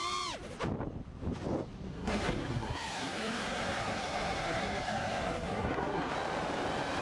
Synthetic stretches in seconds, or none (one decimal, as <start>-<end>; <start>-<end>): 1.9-6.1